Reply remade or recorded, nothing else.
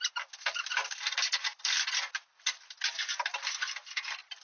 recorded